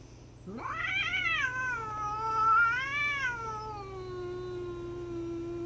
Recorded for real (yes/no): yes